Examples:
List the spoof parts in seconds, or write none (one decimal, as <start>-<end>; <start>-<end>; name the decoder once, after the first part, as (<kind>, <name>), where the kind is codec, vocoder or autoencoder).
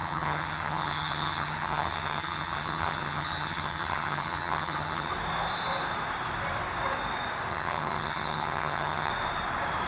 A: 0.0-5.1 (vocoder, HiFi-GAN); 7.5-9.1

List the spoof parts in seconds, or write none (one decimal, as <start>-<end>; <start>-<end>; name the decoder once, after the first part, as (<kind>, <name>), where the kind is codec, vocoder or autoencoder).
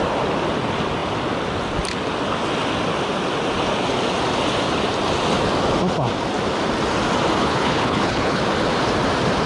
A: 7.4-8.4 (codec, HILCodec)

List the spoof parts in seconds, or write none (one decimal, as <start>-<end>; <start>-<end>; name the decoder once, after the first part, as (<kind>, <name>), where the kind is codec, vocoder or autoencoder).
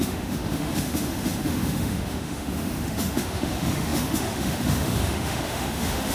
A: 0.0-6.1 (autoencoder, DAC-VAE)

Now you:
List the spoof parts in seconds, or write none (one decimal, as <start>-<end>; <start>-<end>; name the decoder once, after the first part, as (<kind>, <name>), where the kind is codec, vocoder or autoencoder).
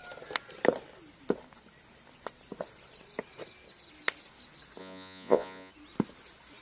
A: 4.8-5.7 (vocoder, Vocos)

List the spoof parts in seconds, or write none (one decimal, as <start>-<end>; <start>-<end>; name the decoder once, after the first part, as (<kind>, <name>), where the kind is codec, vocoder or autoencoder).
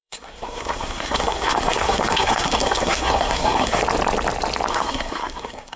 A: 0.0-3.8 (codec, SNAC); 4.7-5.8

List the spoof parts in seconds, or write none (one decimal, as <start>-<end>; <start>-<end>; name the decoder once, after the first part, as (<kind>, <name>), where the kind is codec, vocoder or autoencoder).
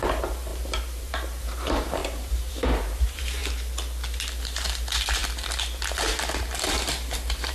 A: 0.0-3.4 (vocoder, BigVGAN v2); 4.4-5.2; 6.6-7.5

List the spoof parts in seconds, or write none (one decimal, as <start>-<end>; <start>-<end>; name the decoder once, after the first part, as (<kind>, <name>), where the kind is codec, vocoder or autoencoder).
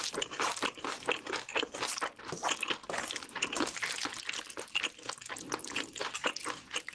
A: 0.0-1.5 (vocoder, BigVGAN v2); 5.6-6.9